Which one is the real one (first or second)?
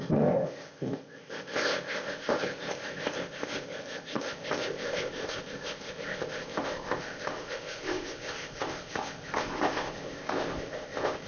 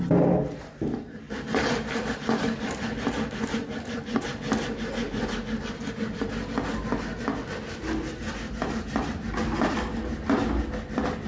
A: second